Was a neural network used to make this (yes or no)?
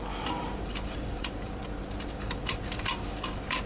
yes